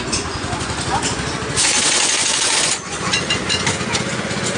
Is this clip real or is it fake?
fake